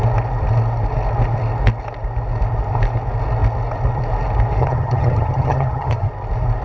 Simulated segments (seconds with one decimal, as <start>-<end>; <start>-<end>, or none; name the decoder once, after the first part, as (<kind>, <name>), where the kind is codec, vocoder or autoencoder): 4.6-6.1 (vocoder, HiFi-GAN)